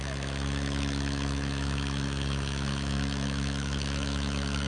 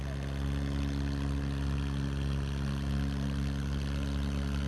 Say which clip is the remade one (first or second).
first